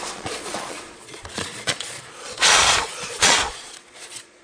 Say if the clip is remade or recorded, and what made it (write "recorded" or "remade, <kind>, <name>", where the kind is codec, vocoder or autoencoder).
remade, vocoder, Vocos